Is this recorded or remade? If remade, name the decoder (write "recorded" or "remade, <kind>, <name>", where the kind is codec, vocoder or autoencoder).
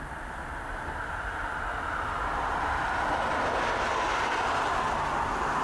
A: recorded